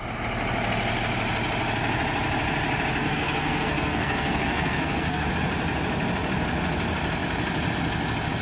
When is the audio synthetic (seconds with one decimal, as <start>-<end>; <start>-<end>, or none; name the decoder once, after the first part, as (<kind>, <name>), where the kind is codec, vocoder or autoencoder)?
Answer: 3.0-5.3 (codec, SNAC)